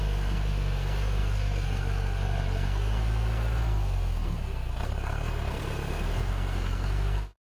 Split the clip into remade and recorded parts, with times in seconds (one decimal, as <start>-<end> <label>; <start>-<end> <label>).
0.0-7.4 remade